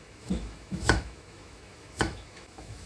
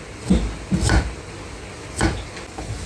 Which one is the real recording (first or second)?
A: second